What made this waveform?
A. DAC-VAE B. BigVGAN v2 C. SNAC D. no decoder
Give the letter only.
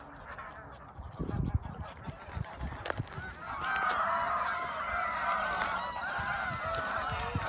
D